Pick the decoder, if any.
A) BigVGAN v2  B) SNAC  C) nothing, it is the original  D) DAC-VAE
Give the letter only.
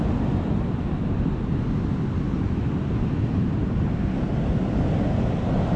C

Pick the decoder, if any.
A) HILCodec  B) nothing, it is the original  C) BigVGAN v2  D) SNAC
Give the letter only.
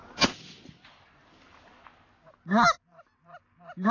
B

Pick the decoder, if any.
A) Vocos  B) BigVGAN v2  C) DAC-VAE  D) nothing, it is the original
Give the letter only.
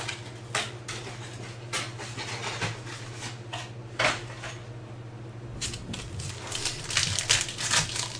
D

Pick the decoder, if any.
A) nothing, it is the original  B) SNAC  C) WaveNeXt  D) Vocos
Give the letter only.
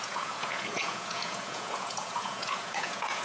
D